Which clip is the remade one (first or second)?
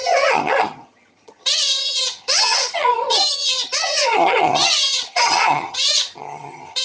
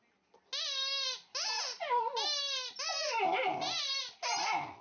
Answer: first